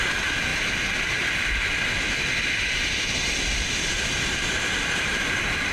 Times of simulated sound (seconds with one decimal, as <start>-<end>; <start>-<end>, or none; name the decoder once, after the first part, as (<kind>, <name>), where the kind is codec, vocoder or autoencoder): none